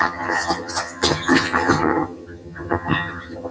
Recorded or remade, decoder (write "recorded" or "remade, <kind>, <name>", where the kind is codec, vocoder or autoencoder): remade, vocoder, HiFi-GAN